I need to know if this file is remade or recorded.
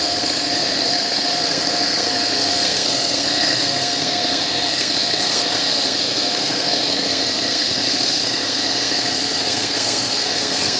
remade